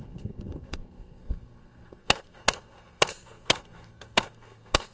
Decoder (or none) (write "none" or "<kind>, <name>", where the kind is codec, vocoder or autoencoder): codec, SNAC